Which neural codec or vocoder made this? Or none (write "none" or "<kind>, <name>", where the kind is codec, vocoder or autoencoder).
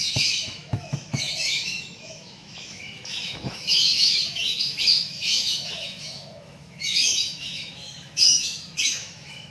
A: autoencoder, DAC-VAE